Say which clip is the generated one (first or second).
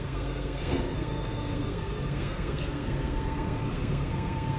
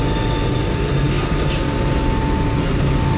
first